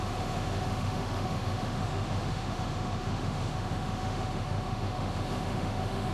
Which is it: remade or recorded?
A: remade